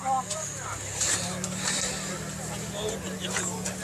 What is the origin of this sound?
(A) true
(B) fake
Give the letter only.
A